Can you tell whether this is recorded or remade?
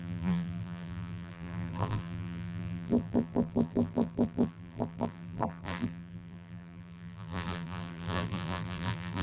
remade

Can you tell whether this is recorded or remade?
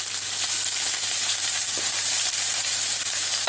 remade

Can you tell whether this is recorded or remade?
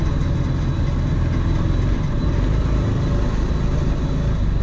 recorded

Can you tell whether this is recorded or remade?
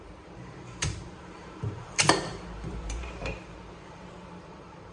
remade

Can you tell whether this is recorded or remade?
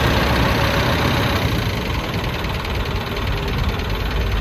recorded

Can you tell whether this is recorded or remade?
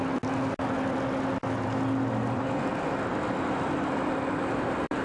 recorded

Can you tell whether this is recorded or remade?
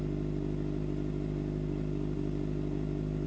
recorded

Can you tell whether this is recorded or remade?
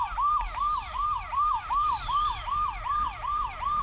remade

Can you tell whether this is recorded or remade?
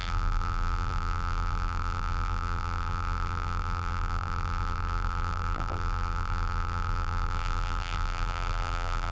remade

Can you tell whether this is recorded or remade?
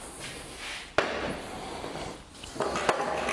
recorded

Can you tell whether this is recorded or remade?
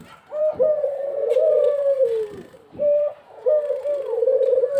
remade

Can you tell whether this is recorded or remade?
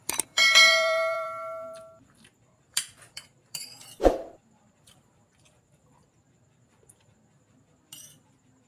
remade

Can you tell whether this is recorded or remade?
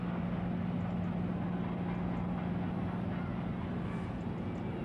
recorded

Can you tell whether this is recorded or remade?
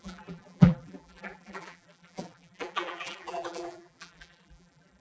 remade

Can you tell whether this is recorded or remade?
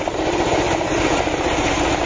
recorded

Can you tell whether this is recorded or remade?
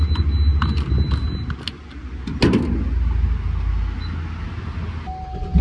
recorded